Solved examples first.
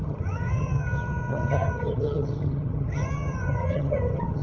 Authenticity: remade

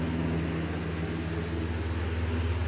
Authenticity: recorded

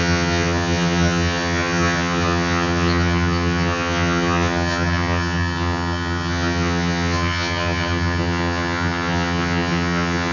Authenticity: remade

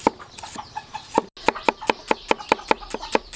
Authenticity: recorded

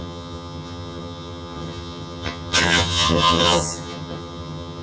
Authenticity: remade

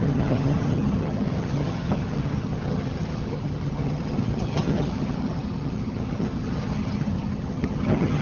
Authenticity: remade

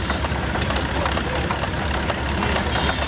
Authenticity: recorded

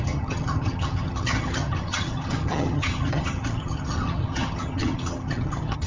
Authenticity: remade